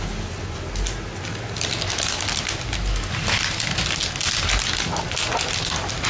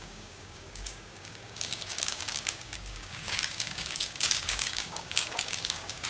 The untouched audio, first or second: first